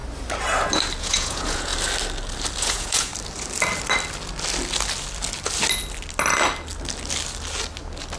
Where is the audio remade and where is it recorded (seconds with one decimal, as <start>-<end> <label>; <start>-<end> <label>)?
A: 0.0-1.0 recorded; 1.0-1.7 remade; 1.7-2.6 recorded; 2.6-3.1 remade; 3.1-8.2 recorded